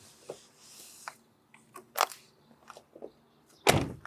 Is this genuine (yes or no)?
yes